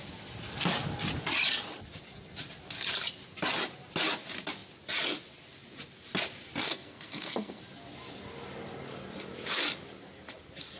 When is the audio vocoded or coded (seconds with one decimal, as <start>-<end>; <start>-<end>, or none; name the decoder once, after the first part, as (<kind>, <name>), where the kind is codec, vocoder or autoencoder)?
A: 6.6-7.6 (codec, SNAC)